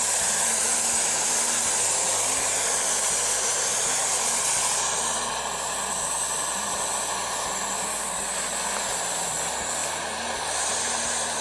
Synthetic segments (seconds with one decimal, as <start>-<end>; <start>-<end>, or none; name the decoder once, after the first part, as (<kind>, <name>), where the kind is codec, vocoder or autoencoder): none